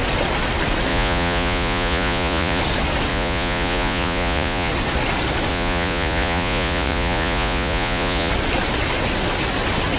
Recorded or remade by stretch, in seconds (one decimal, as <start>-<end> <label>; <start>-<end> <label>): 0.0-0.9 recorded; 0.9-2.6 remade; 2.6-3.1 recorded; 3.1-4.7 remade; 4.7-5.5 recorded; 5.5-8.3 remade; 8.3-10.0 recorded